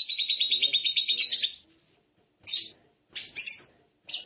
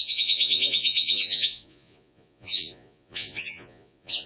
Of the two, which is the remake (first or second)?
second